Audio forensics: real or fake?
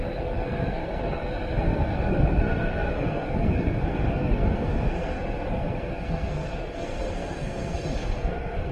fake